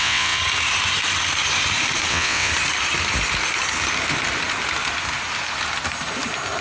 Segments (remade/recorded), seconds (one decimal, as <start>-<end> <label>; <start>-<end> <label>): 0.0-0.4 remade; 0.4-2.1 recorded; 2.1-2.5 remade; 2.5-6.6 recorded